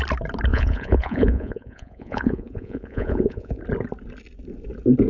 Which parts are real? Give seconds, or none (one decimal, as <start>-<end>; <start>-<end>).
0.0-0.5; 3.6-5.1